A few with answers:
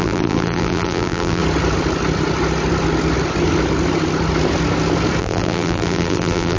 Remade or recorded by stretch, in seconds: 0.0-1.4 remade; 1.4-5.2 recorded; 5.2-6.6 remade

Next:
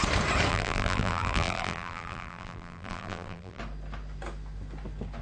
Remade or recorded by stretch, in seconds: 0.0-0.5 recorded; 0.5-3.6 remade; 3.6-5.2 recorded

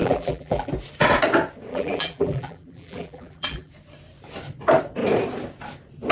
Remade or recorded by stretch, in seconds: 0.0-0.7 remade; 0.7-1.7 recorded; 1.7-3.7 remade; 3.7-6.1 recorded

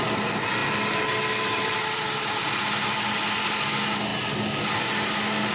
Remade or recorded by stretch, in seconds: 0.0-5.5 recorded

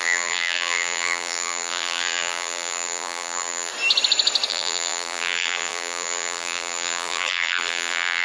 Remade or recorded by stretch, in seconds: 0.0-3.7 remade; 3.7-4.5 recorded; 4.5-8.2 remade

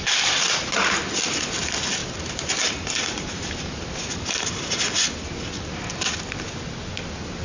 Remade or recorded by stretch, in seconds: 0.0-2.0 recorded; 2.0-4.5 remade; 4.5-7.4 recorded